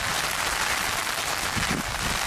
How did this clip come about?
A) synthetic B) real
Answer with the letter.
B